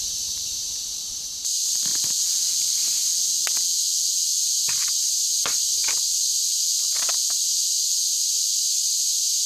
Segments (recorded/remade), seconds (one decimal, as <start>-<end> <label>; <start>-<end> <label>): 0.0-1.9 remade; 1.9-2.7 recorded; 2.7-3.1 remade; 3.1-4.4 recorded; 4.4-5.8 remade; 5.8-8.3 recorded; 8.3-9.5 remade